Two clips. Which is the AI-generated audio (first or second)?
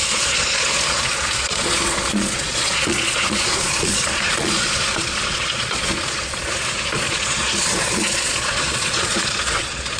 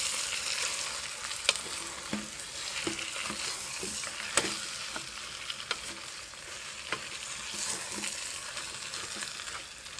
first